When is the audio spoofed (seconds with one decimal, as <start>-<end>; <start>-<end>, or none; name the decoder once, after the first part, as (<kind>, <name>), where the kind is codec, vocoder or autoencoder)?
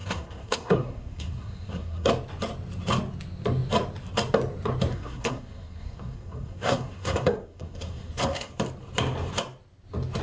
0.0-2.1 (codec, SNAC); 4.9-8.5